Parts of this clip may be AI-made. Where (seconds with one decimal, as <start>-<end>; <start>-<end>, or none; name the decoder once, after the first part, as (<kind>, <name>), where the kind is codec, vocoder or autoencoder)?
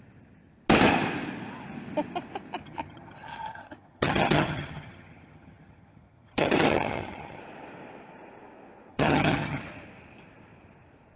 2.6-7.4 (vocoder, HiFi-GAN); 8.9-9.6